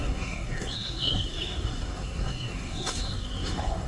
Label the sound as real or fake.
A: fake